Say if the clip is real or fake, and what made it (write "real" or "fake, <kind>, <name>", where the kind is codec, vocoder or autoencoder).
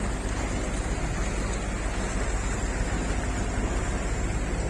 real